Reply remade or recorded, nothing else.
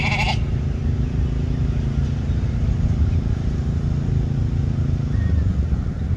recorded